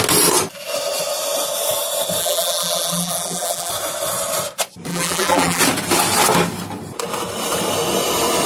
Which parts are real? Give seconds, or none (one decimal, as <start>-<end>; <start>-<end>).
0.0-2.2; 3.7-4.9; 5.6-8.5